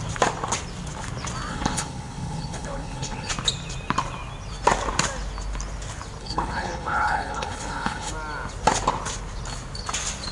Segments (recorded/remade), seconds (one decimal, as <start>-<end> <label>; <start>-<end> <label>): 0.0-1.5 recorded; 1.5-3.3 remade; 3.3-6.2 recorded; 6.2-8.1 remade; 8.1-10.3 recorded